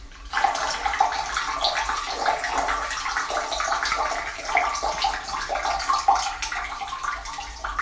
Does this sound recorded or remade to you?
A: recorded